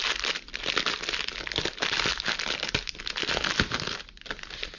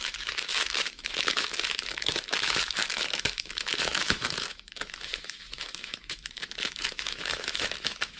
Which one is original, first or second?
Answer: first